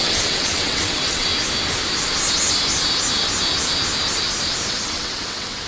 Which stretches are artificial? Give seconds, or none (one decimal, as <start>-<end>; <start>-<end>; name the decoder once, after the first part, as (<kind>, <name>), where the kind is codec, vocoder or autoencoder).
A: 0.0-1.3 (vocoder, WaveNeXt); 4.7-5.7